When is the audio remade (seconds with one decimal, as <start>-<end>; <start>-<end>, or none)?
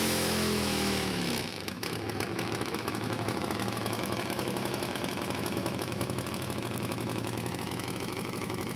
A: 0.0-8.8